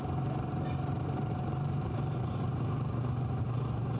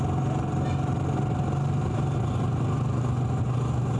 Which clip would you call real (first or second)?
second